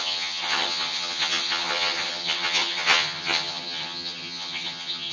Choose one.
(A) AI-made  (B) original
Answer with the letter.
A